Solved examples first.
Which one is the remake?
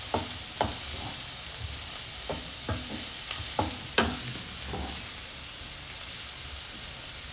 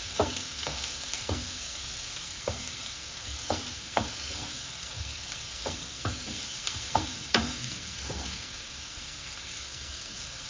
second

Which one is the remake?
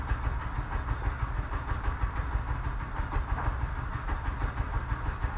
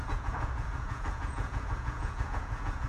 second